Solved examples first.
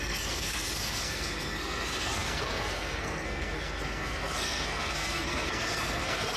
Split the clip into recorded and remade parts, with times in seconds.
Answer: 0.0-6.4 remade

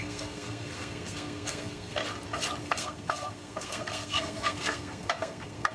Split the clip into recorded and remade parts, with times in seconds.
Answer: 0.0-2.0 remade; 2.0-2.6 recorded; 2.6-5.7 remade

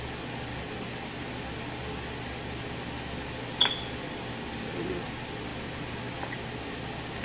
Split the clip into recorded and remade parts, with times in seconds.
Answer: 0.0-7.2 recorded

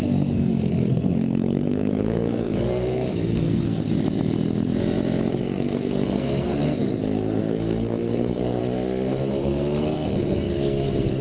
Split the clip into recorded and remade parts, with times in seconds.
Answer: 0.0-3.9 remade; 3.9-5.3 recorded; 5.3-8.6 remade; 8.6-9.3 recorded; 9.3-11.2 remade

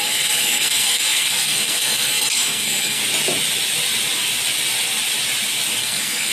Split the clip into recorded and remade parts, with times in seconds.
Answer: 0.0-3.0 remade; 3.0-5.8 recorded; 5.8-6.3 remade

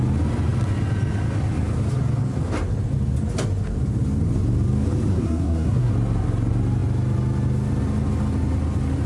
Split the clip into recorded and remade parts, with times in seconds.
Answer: 0.0-5.1 recorded; 5.1-5.9 remade; 5.9-9.1 recorded

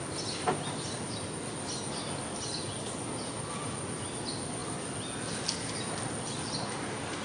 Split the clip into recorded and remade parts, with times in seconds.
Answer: 0.0-7.2 recorded